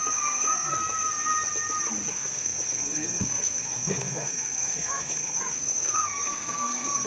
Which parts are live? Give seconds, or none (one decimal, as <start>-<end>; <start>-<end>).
0.7-2.1